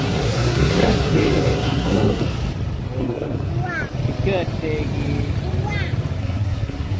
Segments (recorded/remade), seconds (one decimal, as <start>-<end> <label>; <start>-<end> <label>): 0.0-2.2 remade; 2.2-3.0 recorded; 3.0-3.5 remade; 3.5-6.2 recorded; 6.2-7.0 remade